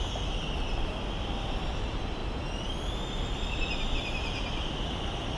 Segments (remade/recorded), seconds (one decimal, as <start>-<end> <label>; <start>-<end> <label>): 0.0-5.4 recorded